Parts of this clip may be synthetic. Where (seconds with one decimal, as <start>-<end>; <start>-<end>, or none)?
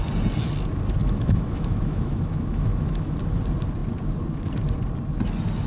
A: 1.0-3.2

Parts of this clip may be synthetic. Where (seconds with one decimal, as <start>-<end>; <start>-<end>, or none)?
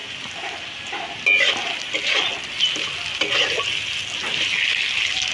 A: none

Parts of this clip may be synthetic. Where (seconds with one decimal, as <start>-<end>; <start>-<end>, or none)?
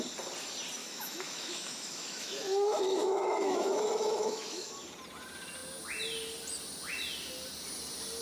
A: 0.8-4.7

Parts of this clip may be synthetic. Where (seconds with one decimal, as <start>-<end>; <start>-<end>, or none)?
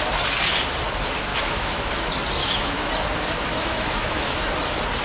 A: 1.3-1.9; 2.4-2.9; 3.5-4.4